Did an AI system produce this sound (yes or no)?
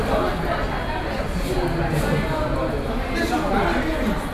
no